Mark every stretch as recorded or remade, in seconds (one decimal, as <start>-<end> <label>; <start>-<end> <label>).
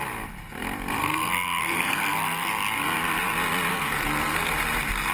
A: 0.0-1.0 recorded; 1.0-2.5 remade; 2.5-3.7 recorded; 3.7-4.5 remade; 4.5-5.1 recorded